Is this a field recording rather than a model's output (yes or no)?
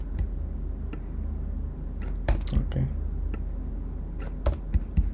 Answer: yes